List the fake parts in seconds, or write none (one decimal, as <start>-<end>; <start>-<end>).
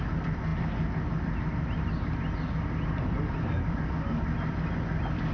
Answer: none